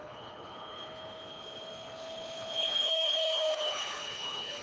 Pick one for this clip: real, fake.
fake